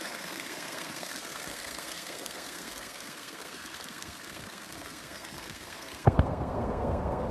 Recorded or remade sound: remade